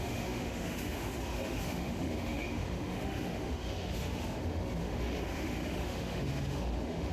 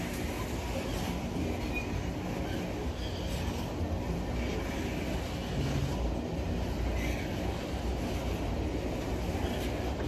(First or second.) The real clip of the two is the second